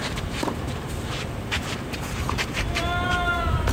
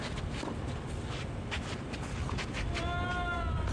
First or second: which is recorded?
second